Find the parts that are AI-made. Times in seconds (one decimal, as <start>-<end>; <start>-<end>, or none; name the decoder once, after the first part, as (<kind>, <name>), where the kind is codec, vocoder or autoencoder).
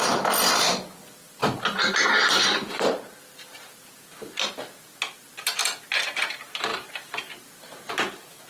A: none